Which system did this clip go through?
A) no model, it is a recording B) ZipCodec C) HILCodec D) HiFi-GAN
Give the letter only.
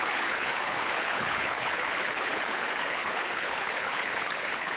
C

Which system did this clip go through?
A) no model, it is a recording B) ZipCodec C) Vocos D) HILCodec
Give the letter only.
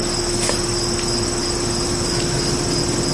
A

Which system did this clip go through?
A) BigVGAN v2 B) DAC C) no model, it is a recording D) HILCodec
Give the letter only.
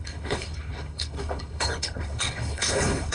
D